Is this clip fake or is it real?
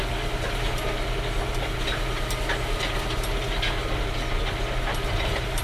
real